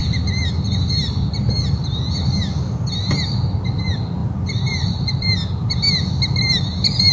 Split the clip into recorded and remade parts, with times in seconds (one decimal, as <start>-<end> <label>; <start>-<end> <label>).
0.0-1.8 remade; 1.8-4.2 recorded; 4.2-5.8 remade; 5.8-7.1 recorded